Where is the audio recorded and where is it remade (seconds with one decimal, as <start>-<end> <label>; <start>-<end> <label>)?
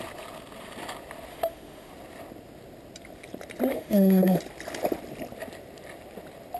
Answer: 0.0-1.3 recorded; 1.3-1.9 remade; 1.9-3.7 recorded; 3.7-4.4 remade; 4.4-6.6 recorded